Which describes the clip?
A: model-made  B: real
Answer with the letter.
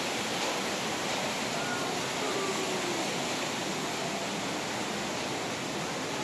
B